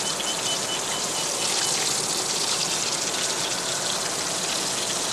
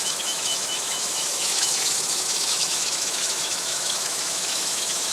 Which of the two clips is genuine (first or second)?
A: first